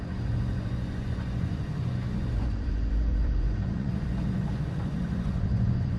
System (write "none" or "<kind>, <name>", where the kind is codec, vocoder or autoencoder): vocoder, Vocos